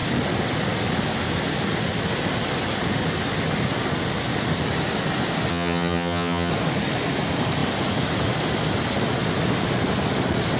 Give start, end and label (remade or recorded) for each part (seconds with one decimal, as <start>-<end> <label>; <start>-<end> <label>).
0.0-5.5 recorded; 5.5-6.5 remade; 6.5-10.6 recorded